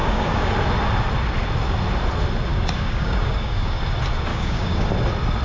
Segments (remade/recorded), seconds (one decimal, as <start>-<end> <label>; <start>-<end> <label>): 0.0-0.5 remade; 0.5-2.5 recorded; 2.5-3.8 remade; 3.8-4.3 recorded; 4.3-4.9 remade; 4.9-5.4 recorded

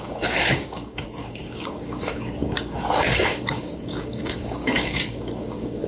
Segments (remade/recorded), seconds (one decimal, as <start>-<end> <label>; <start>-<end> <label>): 0.0-5.9 remade

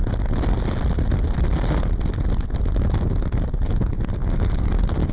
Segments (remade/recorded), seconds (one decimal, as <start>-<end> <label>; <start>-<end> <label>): 0.0-4.2 recorded; 4.2-5.1 remade

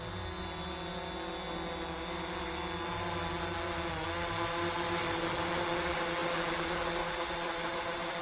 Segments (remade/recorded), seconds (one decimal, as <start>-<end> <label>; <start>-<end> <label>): 0.0-8.2 recorded

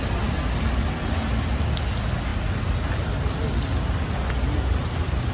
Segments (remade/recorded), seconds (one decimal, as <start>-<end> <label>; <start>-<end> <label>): 0.0-5.3 recorded

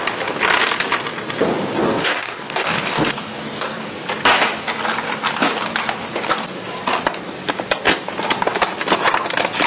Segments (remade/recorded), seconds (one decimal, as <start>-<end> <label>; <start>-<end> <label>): 0.0-1.8 recorded; 1.8-3.9 remade; 3.9-9.7 recorded